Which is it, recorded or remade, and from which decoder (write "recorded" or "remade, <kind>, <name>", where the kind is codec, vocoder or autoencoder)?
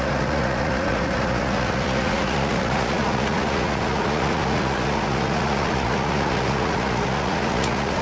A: remade, vocoder, Vocos